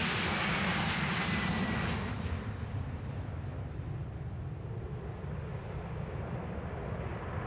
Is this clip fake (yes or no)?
no